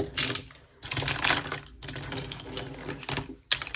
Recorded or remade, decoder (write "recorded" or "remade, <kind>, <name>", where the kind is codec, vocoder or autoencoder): recorded